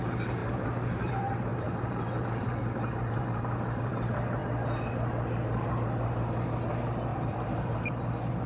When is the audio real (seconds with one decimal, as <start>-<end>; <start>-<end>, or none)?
0.0-0.4; 1.1-1.5; 3.9-7.1; 7.9-8.5